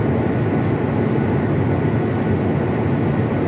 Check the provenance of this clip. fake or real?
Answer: real